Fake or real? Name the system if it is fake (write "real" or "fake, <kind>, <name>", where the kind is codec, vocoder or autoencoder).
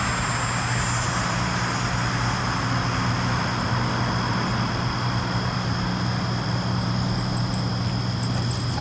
real